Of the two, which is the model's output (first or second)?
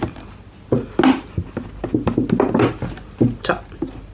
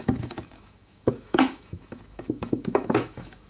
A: second